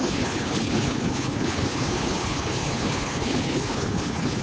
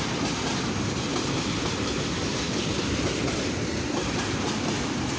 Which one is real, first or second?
second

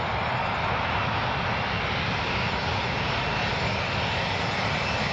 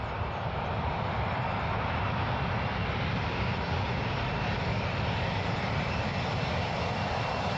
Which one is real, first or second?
first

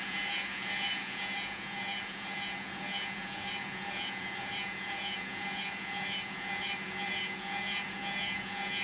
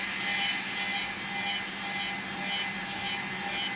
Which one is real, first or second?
second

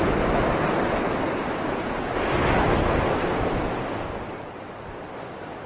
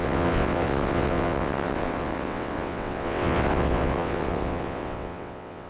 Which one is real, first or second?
first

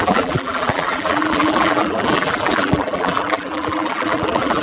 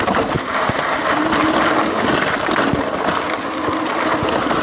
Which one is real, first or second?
second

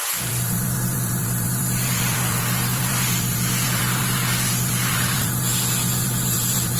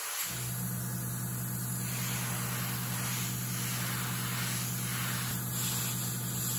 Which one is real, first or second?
second